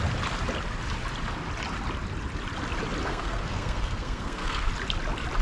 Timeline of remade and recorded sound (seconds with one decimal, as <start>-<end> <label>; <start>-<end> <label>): 0.0-3.1 recorded; 3.1-4.7 remade; 4.7-5.4 recorded